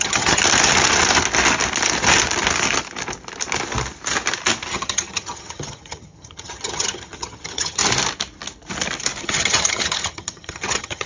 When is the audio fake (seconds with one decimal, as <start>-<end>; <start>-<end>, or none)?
0.0-0.4; 4.7-7.8; 9.2-11.1